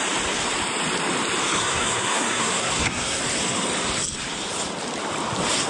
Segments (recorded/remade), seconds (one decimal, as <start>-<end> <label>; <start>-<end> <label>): 0.0-1.6 recorded; 1.6-3.2 remade; 3.2-5.7 recorded